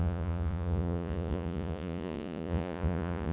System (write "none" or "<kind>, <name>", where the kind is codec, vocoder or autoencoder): vocoder, Vocos